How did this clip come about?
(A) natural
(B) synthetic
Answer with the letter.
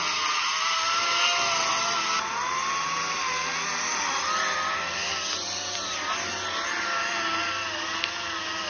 A